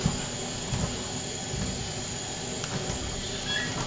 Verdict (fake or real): real